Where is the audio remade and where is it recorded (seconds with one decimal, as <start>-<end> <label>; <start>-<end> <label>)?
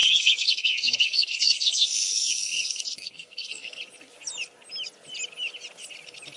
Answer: 0.0-3.8 remade; 3.8-6.4 recorded